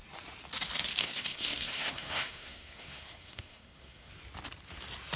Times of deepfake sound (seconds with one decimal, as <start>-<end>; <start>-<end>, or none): 1.0-4.1